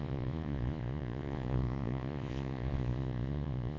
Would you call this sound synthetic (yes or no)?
yes